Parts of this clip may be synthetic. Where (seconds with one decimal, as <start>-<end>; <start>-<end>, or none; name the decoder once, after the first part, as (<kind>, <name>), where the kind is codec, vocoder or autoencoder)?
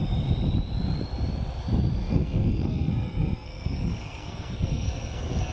2.0-5.5 (codec, SNAC)